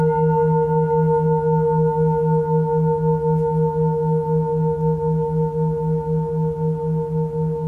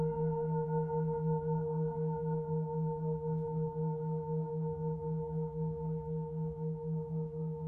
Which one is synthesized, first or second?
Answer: second